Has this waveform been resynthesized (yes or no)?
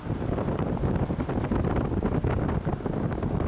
no